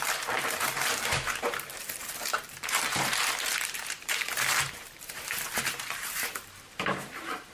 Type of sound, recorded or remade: remade